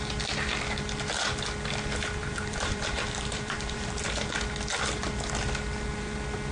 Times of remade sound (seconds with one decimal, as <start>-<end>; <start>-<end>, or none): 2.2-4.0